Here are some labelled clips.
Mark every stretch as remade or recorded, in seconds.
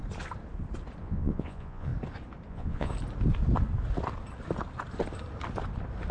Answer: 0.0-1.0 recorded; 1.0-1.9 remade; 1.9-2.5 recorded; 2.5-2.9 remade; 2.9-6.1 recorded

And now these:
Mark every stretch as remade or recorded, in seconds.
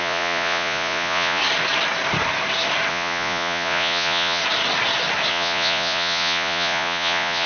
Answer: 0.0-1.4 remade; 1.4-2.9 recorded; 2.9-4.4 remade; 4.4-5.3 recorded; 5.3-7.5 remade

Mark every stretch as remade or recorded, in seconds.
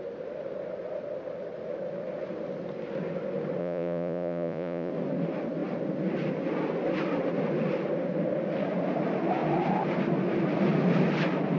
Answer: 0.0-3.6 recorded; 3.6-4.9 remade; 4.9-11.6 recorded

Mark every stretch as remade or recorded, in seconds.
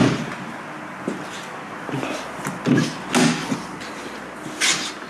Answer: 0.0-5.1 recorded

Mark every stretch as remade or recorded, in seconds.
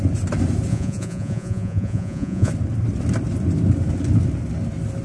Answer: 0.0-0.7 recorded; 0.7-2.5 remade; 2.5-5.0 recorded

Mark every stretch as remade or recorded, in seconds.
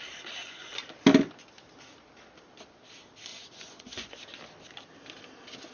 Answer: 0.0-0.4 recorded; 0.4-0.9 remade; 0.9-3.3 recorded; 3.3-4.2 remade; 4.2-5.7 recorded